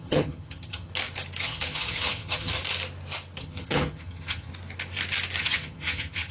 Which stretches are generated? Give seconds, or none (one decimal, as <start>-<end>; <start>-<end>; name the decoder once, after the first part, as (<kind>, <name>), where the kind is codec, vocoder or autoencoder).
0.0-0.9 (vocoder, HiFi-GAN); 1.4-2.5; 3.4-4.5; 5.4-6.3